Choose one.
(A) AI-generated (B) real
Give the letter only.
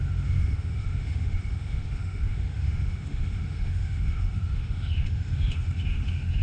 A